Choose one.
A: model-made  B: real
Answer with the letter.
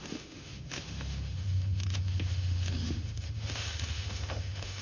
A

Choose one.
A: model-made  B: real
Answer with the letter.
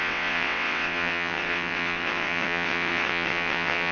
A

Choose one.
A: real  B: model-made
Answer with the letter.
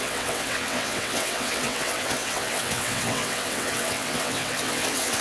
B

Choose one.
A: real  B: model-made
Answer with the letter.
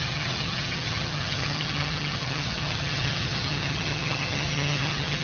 B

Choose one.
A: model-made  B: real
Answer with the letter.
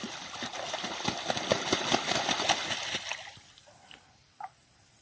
A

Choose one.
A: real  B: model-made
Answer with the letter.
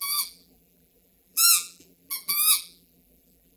B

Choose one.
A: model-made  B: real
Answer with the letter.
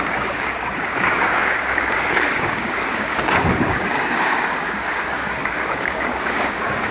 A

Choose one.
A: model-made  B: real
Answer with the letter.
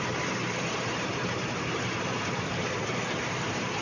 A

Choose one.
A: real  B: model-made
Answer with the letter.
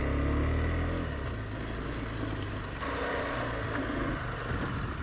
A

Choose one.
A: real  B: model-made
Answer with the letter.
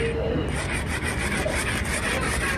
A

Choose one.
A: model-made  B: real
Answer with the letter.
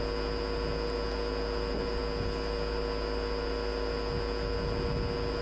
B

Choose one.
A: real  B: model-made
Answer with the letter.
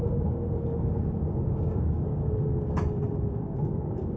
B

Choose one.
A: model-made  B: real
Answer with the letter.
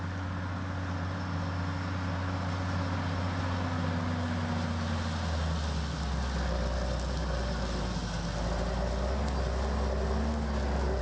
B